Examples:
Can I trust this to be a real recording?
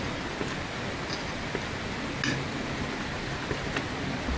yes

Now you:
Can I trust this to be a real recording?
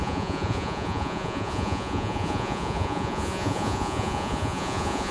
no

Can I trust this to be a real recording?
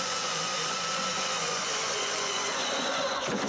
no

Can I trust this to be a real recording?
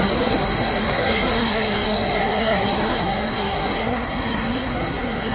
no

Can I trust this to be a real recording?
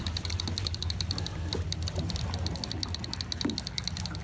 yes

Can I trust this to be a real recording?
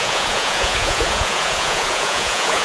no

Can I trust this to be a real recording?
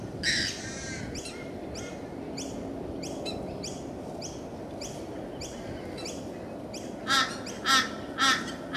yes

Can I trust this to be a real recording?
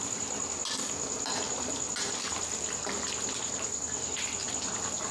yes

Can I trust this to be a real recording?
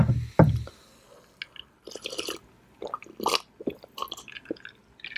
yes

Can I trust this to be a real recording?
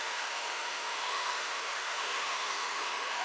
no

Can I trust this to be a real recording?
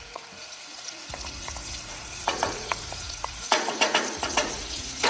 no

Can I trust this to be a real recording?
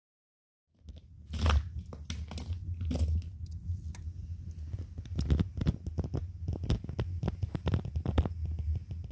yes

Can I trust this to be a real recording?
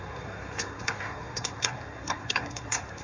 no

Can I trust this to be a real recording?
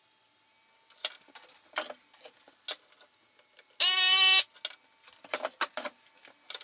yes